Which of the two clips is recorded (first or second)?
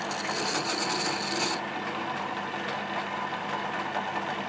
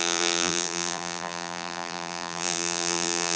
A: first